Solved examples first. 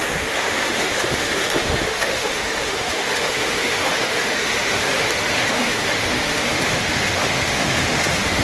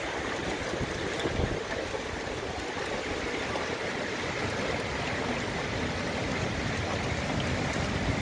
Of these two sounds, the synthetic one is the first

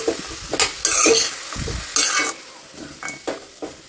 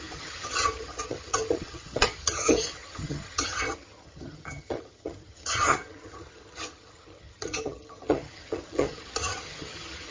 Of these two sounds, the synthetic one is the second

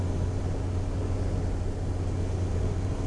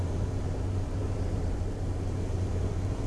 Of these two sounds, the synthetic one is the second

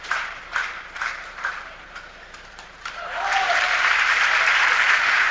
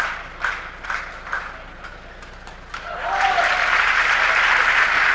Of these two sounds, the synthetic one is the first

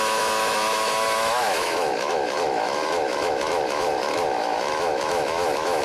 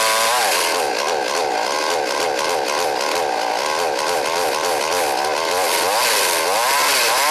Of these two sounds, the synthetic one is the first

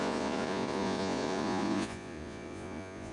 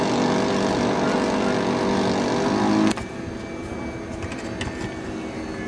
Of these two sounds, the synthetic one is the first